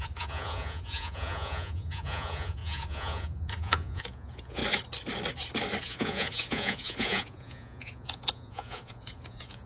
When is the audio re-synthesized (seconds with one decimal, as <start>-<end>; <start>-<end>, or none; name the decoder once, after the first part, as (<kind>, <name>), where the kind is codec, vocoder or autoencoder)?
0.0-4.6 (vocoder, Vocos); 5.8-9.7